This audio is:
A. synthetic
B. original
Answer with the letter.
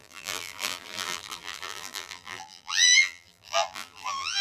A